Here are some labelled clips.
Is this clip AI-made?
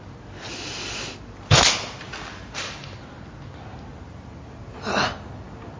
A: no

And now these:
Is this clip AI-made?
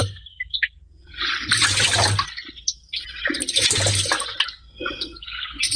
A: no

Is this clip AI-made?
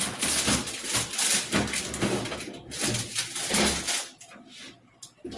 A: no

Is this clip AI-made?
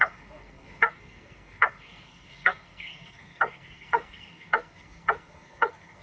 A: yes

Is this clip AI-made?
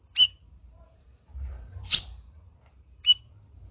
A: yes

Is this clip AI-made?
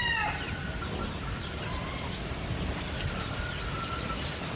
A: yes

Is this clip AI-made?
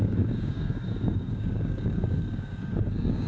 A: yes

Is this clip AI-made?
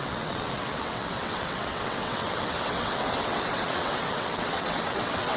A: yes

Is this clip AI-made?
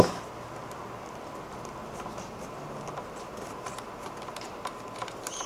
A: no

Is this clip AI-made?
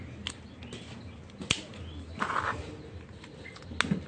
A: no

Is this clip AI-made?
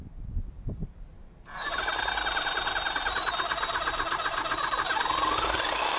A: no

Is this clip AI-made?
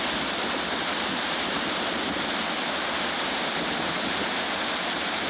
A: no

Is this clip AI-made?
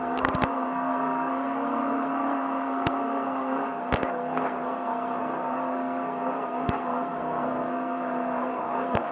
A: yes